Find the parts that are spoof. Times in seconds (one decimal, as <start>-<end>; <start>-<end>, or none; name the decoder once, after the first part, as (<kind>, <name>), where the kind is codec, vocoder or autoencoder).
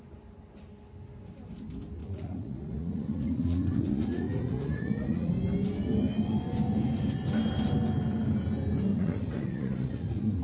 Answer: 2.0-5.3 (vocoder, Vocos); 8.9-10.4